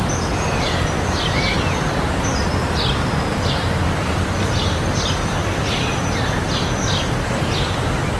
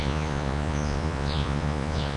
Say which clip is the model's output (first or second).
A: second